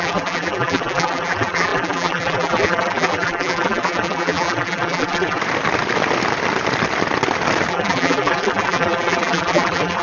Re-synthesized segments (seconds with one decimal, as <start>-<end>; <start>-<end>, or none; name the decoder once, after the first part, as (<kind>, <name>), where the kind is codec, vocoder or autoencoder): 0.0-5.4 (vocoder, BigVGAN v2); 7.7-10.0